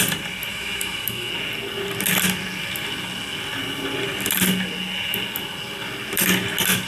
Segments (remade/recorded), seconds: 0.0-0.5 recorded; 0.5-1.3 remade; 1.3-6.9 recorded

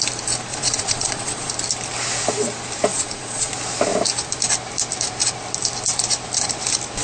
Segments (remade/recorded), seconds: 0.0-0.5 recorded; 0.5-1.5 remade; 1.5-2.9 recorded; 2.9-3.5 remade; 3.5-7.0 recorded

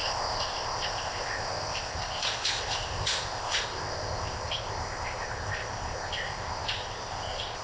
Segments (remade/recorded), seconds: 0.0-7.6 remade

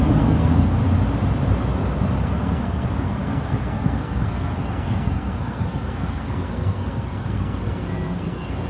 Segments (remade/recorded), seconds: 0.0-0.8 remade; 0.8-2.2 recorded; 2.2-8.7 remade

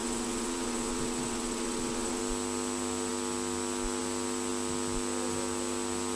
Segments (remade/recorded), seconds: 0.0-2.2 remade; 2.2-6.2 recorded